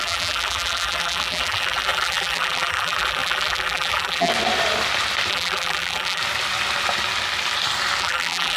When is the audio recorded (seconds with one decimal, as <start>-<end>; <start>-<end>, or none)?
4.3-5.3; 6.2-8.0